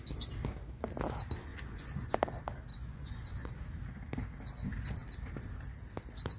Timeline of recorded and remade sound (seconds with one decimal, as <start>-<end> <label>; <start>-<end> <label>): 0.0-1.5 recorded; 1.5-2.1 remade; 2.1-2.7 recorded; 2.7-3.5 remade; 3.5-6.4 recorded